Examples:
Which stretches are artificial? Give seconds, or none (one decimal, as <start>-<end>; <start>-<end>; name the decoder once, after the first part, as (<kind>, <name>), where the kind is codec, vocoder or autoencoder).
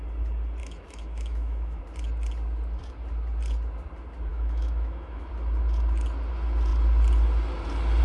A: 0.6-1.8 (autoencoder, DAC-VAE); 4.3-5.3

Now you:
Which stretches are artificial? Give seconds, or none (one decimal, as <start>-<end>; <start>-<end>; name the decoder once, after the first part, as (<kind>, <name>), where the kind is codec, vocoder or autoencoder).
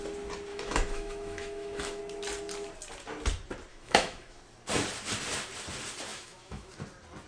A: 0.5-2.0 (autoencoder, DAC-VAE); 3.7-4.4; 6.1-6.7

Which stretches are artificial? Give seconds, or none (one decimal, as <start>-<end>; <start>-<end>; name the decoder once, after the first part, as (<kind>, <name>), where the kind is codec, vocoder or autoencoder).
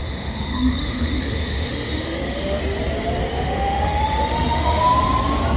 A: 0.0-2.6 (autoencoder, DAC-VAE); 3.3-4.8